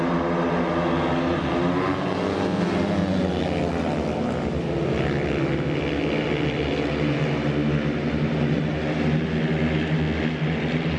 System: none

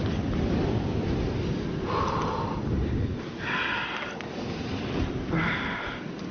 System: none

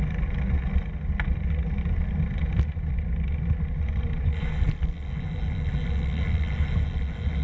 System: none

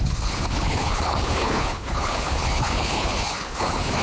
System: codec, HILCodec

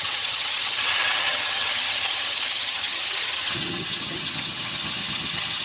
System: vocoder, HiFi-GAN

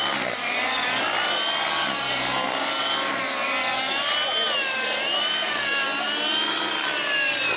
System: none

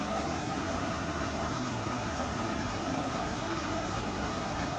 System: codec, SNAC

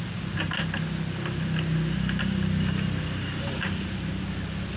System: none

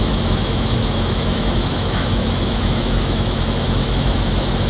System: autoencoder, DAC-VAE